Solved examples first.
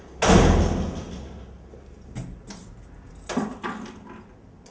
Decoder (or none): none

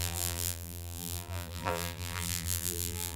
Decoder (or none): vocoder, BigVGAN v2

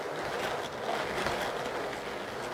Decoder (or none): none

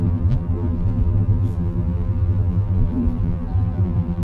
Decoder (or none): vocoder, BigVGAN v2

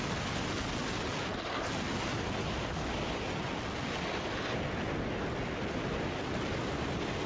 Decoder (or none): none